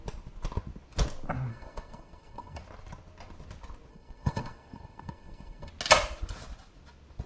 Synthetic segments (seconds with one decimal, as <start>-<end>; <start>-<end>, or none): 1.5-2.6; 3.9-5.7

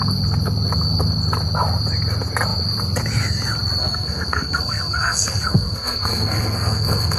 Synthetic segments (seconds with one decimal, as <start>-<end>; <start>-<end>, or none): 3.8-7.2

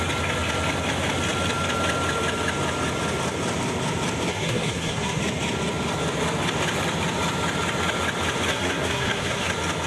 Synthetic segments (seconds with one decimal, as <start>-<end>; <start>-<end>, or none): 4.3-5.2; 8.5-9.5

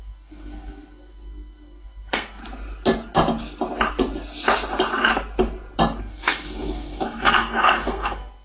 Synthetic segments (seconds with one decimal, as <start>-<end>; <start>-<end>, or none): 0.0-2.4; 6.0-8.4

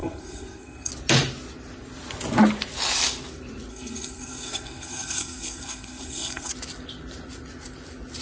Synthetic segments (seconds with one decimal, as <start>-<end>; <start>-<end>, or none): 0.0-0.9; 3.7-6.5

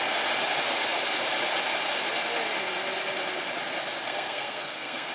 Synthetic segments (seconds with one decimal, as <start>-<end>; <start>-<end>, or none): 4.1-5.1

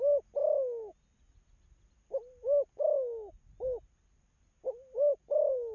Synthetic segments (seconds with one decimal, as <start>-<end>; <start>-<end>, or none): none